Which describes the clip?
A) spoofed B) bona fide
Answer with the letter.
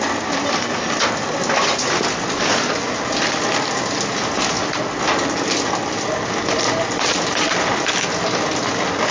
B